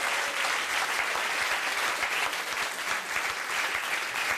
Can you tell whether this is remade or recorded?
recorded